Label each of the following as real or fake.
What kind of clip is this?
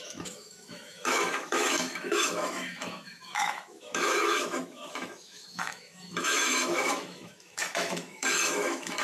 fake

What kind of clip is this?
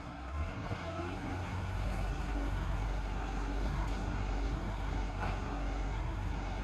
fake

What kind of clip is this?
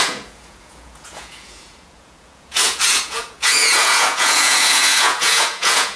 fake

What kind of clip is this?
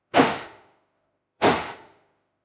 fake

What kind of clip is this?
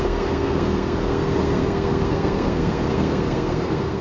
fake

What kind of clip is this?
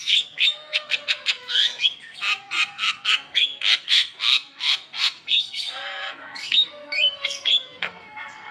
fake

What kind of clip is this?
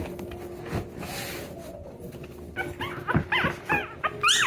real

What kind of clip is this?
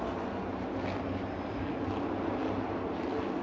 real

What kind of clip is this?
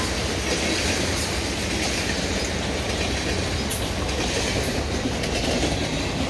real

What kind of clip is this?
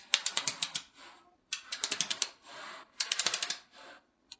real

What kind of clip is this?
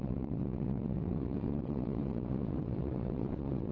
fake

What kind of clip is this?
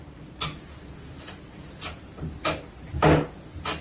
real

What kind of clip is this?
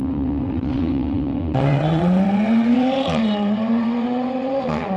fake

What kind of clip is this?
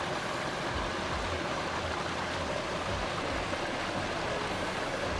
real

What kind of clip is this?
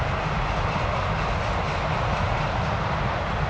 real